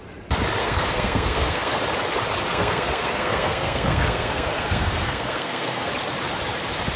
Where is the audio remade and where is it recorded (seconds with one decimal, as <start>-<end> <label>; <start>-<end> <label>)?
0.0-0.6 recorded; 0.6-1.8 remade; 1.8-2.5 recorded; 2.5-5.9 remade; 5.9-7.0 recorded